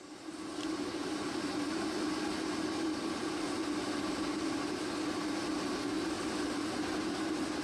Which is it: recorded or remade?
recorded